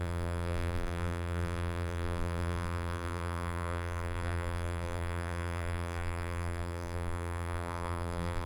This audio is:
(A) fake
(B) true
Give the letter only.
A